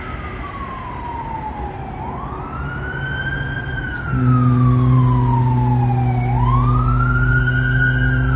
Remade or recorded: recorded